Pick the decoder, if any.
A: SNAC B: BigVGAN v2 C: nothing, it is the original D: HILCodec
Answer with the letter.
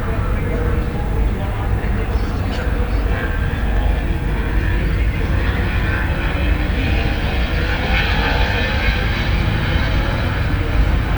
C